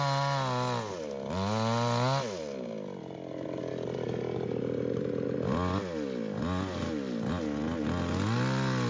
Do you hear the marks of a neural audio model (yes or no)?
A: no